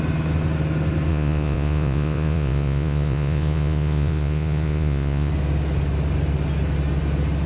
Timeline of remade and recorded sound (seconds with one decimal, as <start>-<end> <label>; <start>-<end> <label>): 0.0-1.1 recorded; 1.1-5.3 remade; 5.3-7.5 recorded